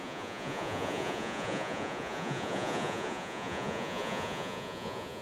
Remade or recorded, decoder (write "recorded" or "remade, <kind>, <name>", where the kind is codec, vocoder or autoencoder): remade, vocoder, Vocos